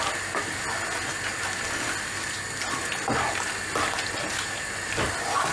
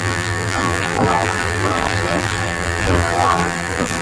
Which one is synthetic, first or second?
second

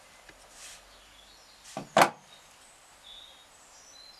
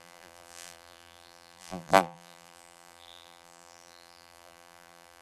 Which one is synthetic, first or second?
second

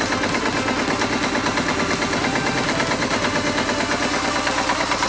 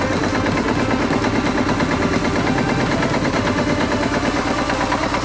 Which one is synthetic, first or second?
second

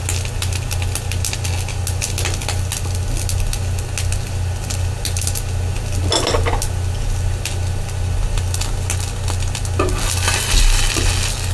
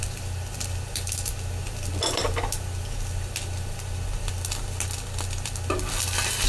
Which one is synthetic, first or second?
second